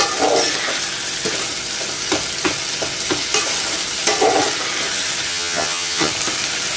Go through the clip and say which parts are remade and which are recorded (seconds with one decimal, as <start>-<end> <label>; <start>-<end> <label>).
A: 0.0-5.3 recorded; 5.3-6.1 remade; 6.1-6.8 recorded